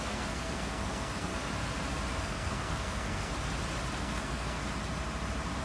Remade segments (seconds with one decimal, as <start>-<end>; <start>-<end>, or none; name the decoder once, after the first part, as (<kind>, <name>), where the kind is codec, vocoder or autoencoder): 0.0-1.3 (codec, SNAC); 2.2-3.3; 4.0-4.6